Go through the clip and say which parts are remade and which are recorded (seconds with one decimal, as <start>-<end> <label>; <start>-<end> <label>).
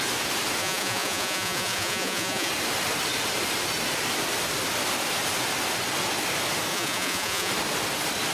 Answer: 0.0-0.6 recorded; 0.6-2.5 remade; 2.5-6.7 recorded; 6.7-7.5 remade; 7.5-8.3 recorded